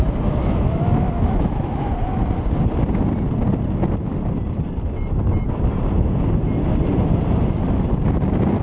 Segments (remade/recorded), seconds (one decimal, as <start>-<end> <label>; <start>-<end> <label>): 0.0-0.4 recorded; 0.4-1.9 remade; 1.9-8.6 recorded